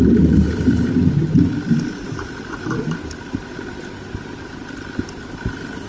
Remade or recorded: recorded